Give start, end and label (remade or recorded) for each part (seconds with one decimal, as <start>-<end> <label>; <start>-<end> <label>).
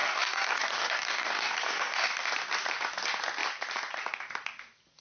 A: 0.0-2.2 remade; 2.2-5.0 recorded